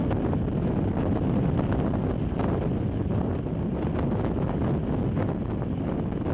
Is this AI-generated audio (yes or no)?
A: no